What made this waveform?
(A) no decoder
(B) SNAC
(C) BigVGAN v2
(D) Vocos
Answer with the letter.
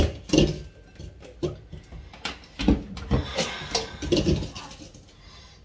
A